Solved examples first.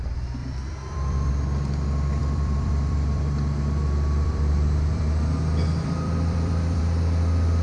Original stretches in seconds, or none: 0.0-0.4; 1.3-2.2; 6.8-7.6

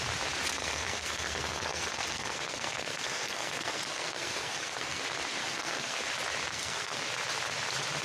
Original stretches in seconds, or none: 0.0-0.6; 5.0-5.4; 6.0-6.5; 7.0-8.0

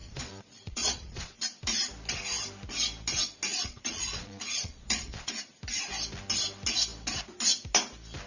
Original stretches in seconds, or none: 1.4-3.5; 5.3-8.3

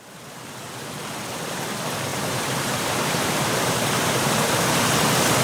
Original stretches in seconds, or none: 0.0-2.1; 4.8-5.4

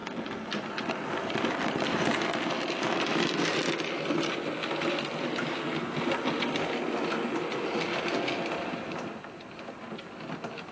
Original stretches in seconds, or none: 0.0-10.7

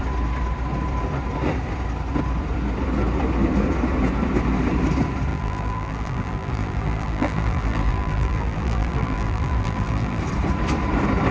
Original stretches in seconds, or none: 0.0-5.3; 10.2-11.3